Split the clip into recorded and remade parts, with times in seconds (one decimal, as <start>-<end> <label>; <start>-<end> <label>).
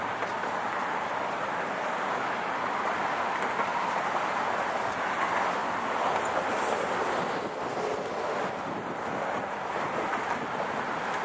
0.0-11.2 recorded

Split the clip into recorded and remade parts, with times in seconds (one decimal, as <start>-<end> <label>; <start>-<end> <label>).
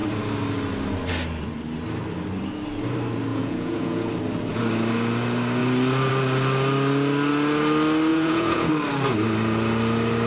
0.0-3.3 recorded; 3.3-4.1 remade; 4.1-8.1 recorded; 8.1-8.7 remade; 8.7-10.3 recorded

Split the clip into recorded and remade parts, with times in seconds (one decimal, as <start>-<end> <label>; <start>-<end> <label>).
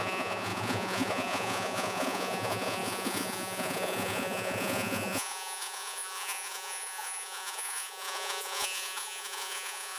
0.0-10.0 remade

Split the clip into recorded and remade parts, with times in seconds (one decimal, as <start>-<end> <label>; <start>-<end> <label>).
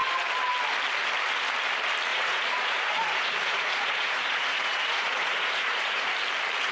0.0-2.1 recorded; 2.1-6.1 remade; 6.1-6.7 recorded